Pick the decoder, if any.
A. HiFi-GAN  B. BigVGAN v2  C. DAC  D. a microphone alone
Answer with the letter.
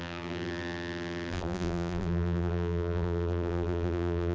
B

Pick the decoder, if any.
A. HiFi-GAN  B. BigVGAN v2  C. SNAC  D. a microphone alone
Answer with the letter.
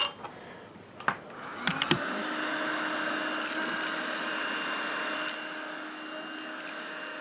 D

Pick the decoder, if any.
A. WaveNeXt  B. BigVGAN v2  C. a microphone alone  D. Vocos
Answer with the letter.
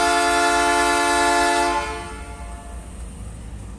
C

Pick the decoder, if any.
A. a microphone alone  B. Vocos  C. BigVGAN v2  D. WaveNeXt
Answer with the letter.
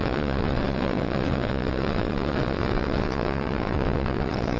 D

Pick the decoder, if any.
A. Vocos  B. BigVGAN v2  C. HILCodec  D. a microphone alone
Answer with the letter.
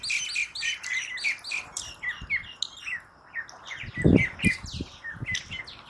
D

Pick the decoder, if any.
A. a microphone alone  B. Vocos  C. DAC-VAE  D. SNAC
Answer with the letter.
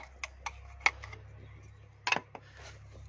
A